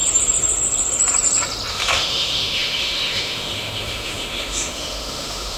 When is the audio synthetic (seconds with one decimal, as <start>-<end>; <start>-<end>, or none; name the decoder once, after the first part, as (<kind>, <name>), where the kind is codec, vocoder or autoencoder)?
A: 1.7-5.6 (autoencoder, DAC-VAE)